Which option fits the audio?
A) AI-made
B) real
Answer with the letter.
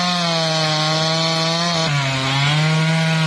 B